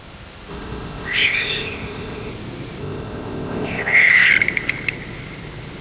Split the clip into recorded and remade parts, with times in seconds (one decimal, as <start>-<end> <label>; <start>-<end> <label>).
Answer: 0.0-0.5 recorded; 0.5-2.3 remade; 2.3-2.8 recorded; 2.8-4.3 remade; 4.3-5.8 recorded